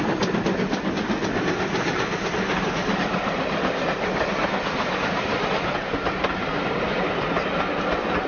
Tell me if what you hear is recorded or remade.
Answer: recorded